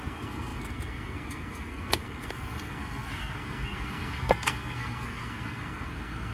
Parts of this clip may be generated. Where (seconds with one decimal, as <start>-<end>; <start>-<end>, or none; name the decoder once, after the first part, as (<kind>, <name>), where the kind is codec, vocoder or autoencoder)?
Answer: 0.0-6.3 (codec, SNAC)